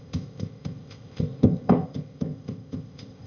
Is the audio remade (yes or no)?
yes